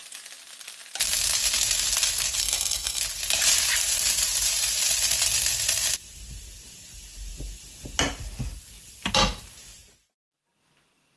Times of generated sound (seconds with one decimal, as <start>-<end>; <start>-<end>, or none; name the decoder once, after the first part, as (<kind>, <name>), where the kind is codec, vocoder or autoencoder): 2.4-3.0 (codec, SNAC)